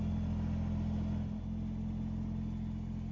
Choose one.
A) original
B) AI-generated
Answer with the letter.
A